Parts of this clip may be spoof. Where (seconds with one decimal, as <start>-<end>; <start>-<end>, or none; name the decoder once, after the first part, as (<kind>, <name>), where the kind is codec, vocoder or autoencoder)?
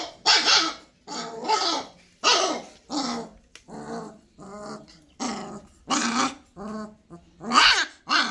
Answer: none